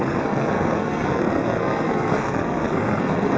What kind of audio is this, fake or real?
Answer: fake